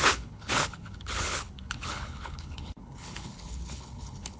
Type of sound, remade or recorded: remade